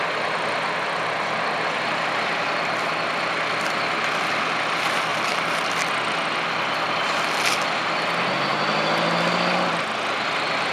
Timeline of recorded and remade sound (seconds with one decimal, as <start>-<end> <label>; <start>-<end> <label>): 0.0-5.1 recorded; 5.1-5.7 remade; 5.7-10.7 recorded